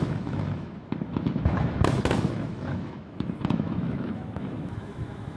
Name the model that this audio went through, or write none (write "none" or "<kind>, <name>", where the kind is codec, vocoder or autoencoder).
autoencoder, DAC-VAE